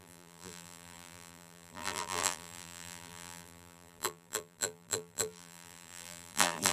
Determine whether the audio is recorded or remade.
remade